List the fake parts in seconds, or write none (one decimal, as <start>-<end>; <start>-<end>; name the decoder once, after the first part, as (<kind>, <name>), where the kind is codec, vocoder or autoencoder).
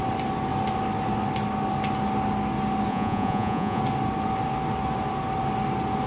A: 2.9-3.8 (vocoder, Vocos)